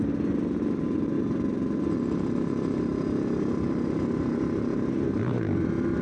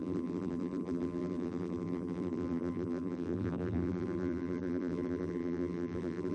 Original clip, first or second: first